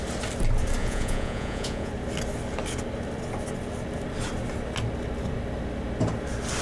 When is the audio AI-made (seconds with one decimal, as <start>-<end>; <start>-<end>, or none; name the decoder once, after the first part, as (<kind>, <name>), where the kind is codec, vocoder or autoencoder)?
0.8-1.9 (vocoder, Vocos)